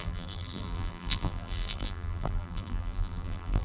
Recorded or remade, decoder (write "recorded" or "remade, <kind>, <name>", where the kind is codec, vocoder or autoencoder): remade, vocoder, BigVGAN v2